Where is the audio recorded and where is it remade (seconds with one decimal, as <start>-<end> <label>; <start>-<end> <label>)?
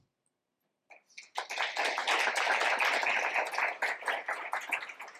0.0-5.2 recorded